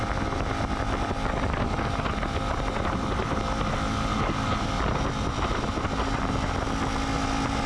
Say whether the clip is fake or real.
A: real